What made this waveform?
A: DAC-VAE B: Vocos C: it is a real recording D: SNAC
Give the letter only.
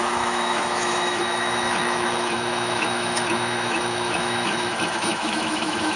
A